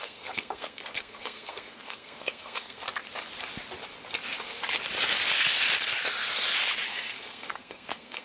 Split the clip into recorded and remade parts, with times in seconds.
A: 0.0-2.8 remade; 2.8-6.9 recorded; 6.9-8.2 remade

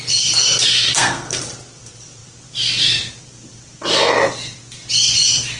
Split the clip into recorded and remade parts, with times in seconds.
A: 0.0-0.7 recorded; 0.7-1.4 remade; 1.4-5.6 recorded

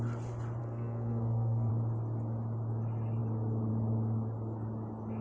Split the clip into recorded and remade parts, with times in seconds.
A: 0.0-0.6 recorded; 0.6-1.7 remade; 1.7-5.2 recorded

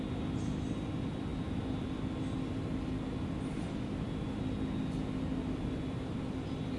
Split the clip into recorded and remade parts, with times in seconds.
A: 0.0-6.8 recorded

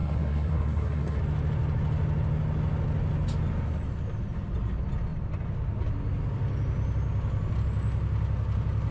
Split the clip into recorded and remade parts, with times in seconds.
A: 0.0-1.2 remade; 1.2-8.9 recorded